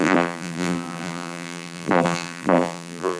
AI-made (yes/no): yes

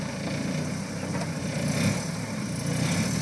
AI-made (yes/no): yes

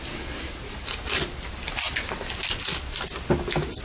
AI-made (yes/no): no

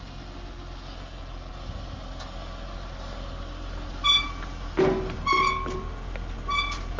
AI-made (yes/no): no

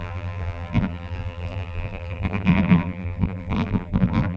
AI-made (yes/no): yes